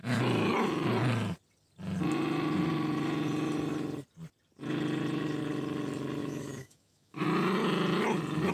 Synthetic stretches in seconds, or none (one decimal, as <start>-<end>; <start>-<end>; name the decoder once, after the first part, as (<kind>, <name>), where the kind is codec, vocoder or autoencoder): 6.2-7.2 (autoencoder, DAC-VAE)

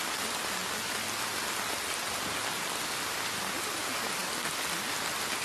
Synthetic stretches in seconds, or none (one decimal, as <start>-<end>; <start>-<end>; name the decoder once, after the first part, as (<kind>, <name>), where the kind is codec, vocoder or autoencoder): none

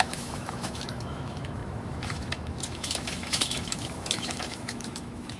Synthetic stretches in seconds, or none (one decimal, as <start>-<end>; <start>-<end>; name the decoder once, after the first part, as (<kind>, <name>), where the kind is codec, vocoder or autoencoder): 0.0-5.4 (autoencoder, DAC-VAE)

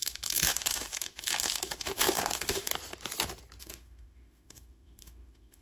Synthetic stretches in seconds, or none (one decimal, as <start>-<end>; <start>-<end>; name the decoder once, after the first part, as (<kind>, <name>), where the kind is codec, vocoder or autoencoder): 0.0-2.7 (autoencoder, DAC-VAE); 3.6-5.6

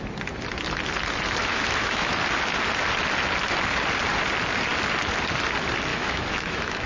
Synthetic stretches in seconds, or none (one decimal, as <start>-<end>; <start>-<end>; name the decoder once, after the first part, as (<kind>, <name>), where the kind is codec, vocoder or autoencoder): 1.4-2.1 (autoencoder, DAC-VAE); 5.9-6.9

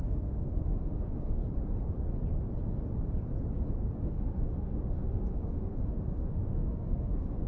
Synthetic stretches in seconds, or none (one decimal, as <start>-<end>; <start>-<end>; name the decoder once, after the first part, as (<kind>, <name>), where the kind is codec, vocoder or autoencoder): 0.0-1.4 (autoencoder, DAC-VAE); 4.0-7.5

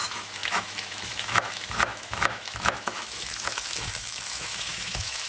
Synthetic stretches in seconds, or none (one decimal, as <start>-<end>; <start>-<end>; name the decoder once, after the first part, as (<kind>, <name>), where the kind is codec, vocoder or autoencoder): 0.0-5.3 (autoencoder, DAC-VAE)